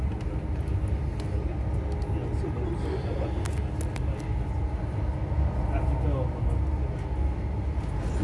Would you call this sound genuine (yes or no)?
yes